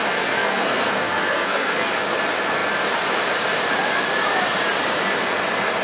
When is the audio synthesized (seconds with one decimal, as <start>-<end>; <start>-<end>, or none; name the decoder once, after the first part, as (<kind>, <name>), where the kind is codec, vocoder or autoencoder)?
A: 0.0-1.9 (codec, SNAC)